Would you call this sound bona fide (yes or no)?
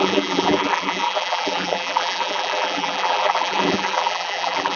no